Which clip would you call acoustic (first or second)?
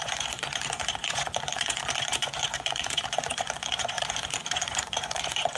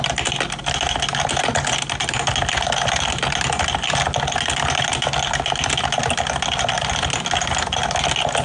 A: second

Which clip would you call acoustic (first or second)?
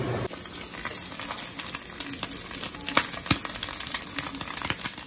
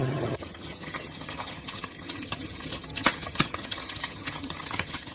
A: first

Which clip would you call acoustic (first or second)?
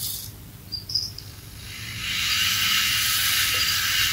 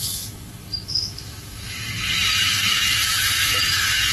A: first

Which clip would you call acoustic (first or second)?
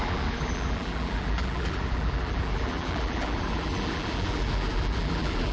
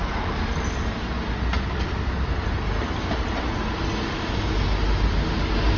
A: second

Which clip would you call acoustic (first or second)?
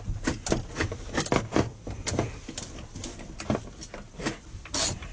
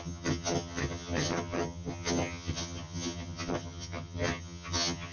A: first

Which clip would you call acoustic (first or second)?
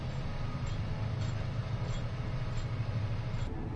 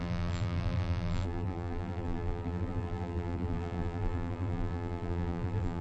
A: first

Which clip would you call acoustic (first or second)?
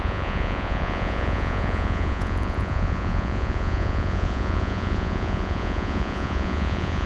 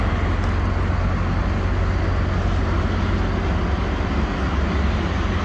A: second